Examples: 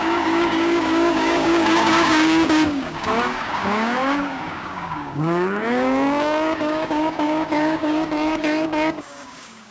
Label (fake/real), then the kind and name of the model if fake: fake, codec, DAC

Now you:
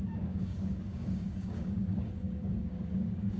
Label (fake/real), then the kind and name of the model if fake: fake, codec, DAC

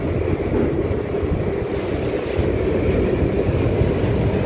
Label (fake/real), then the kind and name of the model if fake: real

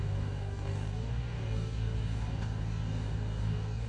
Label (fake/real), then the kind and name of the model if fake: fake, codec, DAC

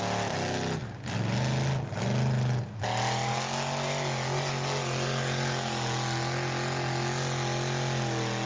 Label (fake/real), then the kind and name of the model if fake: real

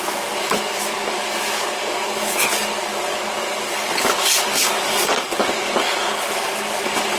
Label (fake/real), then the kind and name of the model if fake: fake, codec, DAC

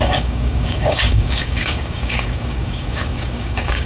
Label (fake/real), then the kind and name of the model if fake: fake, codec, DAC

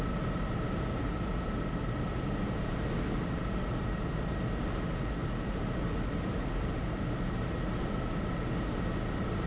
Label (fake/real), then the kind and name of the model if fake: real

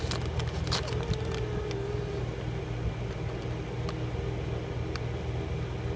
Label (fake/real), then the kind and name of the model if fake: real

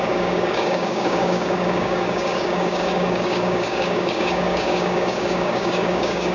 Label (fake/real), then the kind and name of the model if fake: fake, codec, DAC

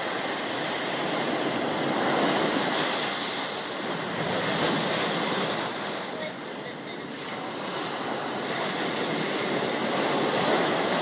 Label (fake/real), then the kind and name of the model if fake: real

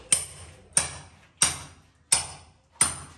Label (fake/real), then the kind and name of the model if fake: real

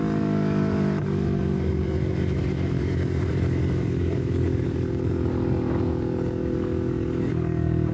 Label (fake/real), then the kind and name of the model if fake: fake, codec, DAC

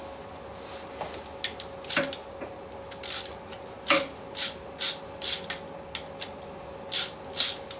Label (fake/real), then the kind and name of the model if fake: real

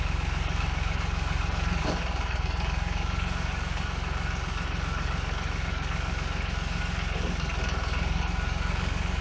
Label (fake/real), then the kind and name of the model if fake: fake, codec, DAC